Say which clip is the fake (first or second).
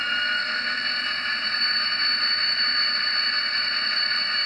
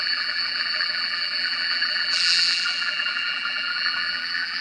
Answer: second